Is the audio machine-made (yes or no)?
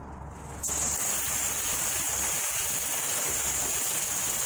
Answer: yes